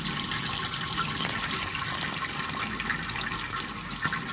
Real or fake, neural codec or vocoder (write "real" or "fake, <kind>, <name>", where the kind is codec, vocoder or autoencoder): real